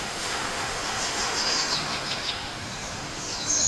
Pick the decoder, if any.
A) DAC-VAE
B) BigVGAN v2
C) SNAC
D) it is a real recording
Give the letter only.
A